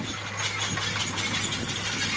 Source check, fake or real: real